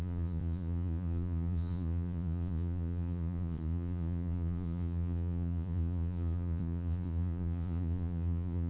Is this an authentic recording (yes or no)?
no